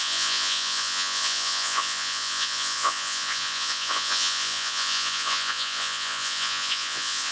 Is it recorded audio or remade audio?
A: remade